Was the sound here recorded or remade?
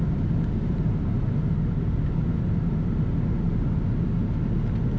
recorded